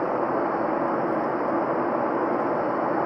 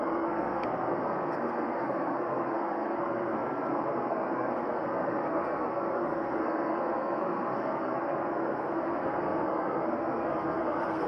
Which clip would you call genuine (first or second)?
first